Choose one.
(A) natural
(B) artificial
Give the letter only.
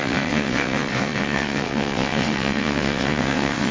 B